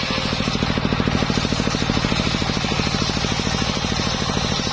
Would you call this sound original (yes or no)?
yes